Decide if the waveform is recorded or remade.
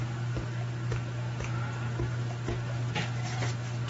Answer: recorded